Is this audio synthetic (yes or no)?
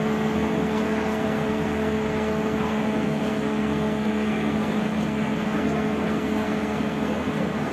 yes